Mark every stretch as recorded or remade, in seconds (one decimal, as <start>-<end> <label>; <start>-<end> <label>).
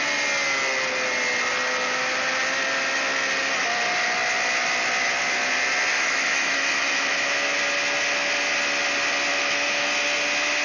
0.0-5.9 recorded; 5.9-7.6 remade; 7.6-9.3 recorded; 9.3-9.9 remade; 9.9-10.6 recorded